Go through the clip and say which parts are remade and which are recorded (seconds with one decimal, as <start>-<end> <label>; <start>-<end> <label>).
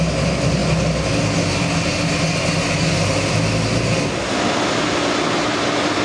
0.0-6.0 recorded